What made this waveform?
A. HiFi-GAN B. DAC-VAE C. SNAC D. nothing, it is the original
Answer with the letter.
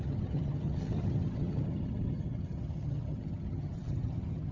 A